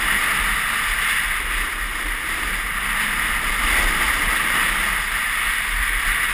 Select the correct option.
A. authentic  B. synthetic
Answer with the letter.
A